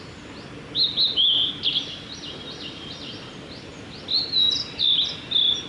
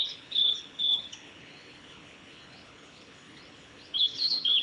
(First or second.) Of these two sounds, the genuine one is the first